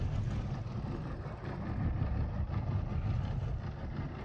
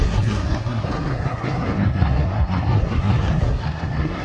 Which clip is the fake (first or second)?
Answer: second